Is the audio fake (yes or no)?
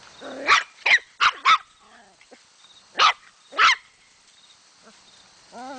no